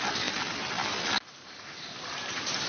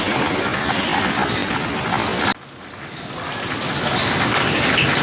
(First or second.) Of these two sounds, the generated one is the first